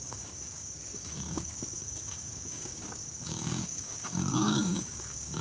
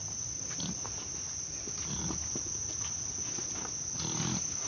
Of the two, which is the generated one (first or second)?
first